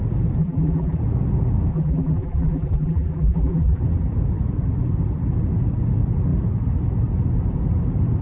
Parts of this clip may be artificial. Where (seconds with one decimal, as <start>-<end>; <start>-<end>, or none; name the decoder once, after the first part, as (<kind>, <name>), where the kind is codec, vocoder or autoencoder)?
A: 0.4-1.0 (vocoder, BigVGAN v2); 1.7-3.8